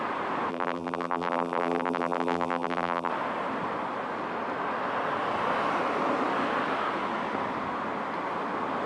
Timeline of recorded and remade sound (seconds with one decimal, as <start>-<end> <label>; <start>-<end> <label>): 0.0-0.5 recorded; 0.5-3.1 remade; 3.1-8.9 recorded